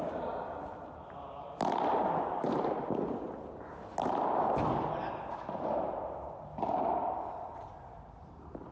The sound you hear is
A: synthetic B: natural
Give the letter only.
B